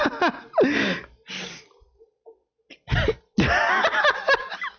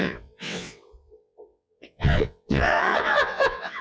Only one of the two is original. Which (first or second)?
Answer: first